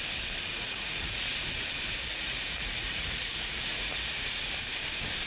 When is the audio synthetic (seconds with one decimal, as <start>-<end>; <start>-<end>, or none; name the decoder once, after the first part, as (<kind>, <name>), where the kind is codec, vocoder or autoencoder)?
0.5-1.4 (vocoder, Vocos); 2.1-4.5